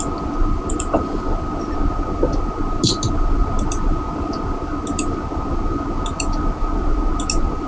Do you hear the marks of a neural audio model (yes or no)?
no